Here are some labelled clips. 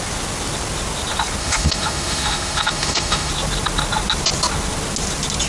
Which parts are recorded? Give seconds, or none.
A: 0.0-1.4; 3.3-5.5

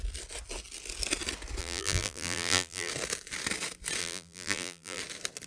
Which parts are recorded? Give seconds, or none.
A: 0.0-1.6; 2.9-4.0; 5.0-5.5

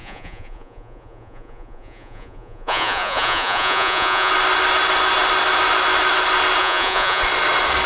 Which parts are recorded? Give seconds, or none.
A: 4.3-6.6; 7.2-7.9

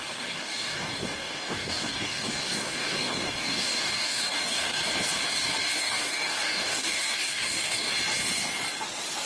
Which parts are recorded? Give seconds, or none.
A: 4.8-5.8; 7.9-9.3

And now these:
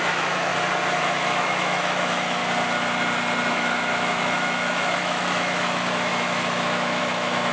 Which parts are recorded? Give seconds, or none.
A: 0.5-1.0; 2.4-3.5

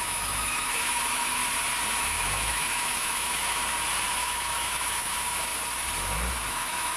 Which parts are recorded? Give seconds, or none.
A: 1.4-2.0; 3.6-4.1; 5.5-6.5

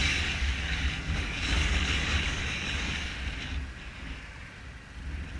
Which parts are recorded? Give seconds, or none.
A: 3.2-5.4